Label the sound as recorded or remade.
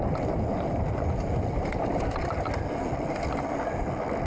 recorded